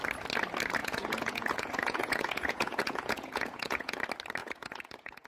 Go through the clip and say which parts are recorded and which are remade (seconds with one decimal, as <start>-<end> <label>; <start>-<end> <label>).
0.0-0.8 recorded; 0.8-4.0 remade; 4.0-4.4 recorded; 4.4-5.3 remade